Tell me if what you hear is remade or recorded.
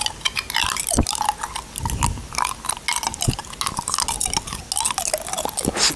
recorded